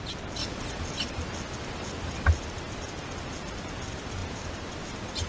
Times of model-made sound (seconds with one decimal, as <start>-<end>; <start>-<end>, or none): none